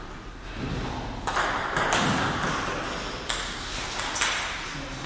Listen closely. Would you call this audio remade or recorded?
recorded